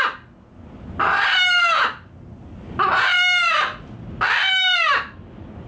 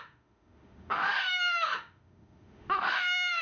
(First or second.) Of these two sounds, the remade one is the second